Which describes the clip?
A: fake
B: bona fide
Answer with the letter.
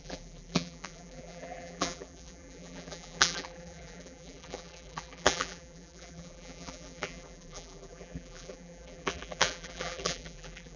A